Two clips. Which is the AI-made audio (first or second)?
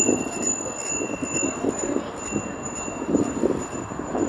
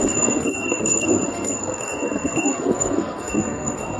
second